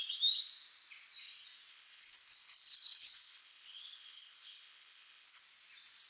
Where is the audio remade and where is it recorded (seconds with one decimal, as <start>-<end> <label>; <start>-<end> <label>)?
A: 0.0-1.7 recorded; 1.7-5.4 remade; 5.4-6.1 recorded